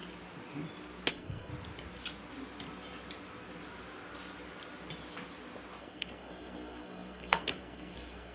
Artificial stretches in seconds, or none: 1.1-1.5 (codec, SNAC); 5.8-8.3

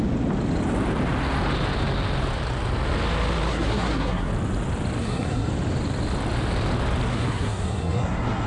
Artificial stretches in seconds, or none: 3.5-4.3 (codec, SNAC); 5.0-5.5; 7.1-8.5

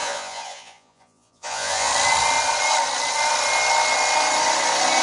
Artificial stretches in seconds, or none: 0.0-1.9 (vocoder, Vocos)

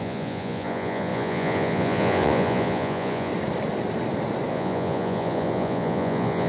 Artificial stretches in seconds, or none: 0.0-3.3 (vocoder, Vocos); 4.5-6.5

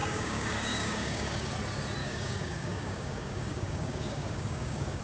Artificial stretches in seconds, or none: 0.0-1.5 (codec, DAC); 2.0-5.0